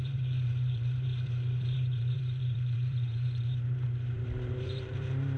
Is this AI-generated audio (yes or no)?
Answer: yes